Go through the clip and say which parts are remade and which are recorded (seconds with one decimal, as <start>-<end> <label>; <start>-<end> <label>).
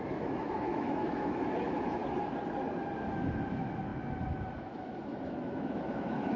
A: 0.0-2.0 remade; 2.0-3.5 recorded; 3.5-6.4 remade